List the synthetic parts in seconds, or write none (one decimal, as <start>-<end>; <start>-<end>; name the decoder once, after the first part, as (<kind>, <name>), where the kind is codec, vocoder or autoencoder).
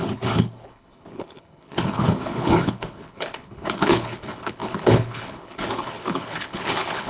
0.0-7.1 (codec, HILCodec)